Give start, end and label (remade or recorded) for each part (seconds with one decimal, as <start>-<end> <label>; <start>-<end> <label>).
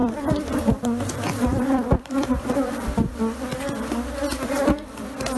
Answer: 0.0-3.2 remade; 3.2-5.4 recorded